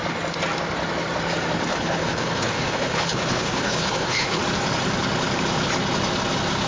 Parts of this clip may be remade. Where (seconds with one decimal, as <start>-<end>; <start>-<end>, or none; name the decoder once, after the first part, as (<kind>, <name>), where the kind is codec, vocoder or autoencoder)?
1.7-4.4 (codec, HILCodec)